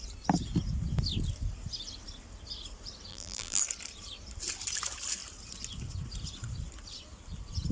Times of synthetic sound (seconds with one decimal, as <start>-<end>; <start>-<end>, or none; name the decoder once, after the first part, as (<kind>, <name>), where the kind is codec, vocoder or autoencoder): 3.1-3.6 (vocoder, BigVGAN v2)